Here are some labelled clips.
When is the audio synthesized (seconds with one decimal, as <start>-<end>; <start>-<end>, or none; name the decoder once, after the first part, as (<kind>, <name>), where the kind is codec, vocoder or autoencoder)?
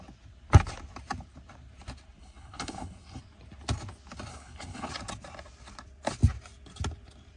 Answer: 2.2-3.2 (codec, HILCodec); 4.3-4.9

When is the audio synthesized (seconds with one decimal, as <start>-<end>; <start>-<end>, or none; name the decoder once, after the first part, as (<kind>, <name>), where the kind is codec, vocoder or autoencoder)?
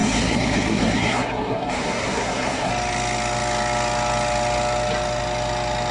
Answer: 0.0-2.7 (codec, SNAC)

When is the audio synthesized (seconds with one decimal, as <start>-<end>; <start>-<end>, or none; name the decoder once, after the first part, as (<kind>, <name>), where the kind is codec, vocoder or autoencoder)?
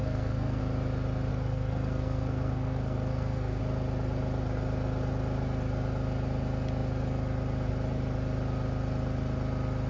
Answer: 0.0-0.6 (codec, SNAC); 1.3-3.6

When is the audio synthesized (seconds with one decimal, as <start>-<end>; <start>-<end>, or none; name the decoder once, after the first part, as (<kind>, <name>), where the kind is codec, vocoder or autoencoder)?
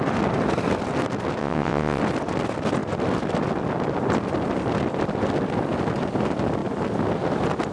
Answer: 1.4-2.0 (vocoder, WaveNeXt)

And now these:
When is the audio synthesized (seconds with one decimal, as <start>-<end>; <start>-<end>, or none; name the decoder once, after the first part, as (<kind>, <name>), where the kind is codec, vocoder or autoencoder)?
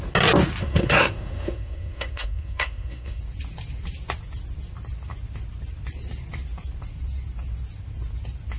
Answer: 0.6-3.2 (codec, SNAC)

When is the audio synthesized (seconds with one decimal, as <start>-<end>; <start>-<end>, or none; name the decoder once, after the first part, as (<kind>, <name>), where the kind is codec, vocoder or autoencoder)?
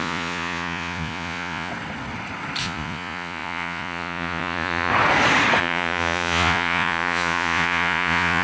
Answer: 0.0-1.7 (vocoder, Vocos); 2.6-4.9; 5.6-8.4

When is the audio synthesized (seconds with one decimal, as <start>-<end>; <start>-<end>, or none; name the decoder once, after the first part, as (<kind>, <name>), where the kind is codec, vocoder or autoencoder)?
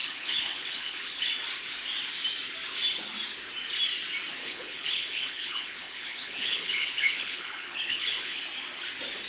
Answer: 0.0-1.3 (codec, HILCodec); 4.4-8.4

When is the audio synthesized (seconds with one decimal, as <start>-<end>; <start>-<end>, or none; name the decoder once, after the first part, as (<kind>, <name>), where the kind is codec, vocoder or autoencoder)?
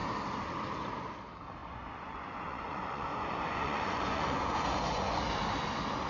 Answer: 1.6-5.2 (vocoder, Vocos)